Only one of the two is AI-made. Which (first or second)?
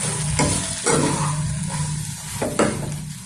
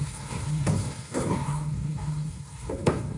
second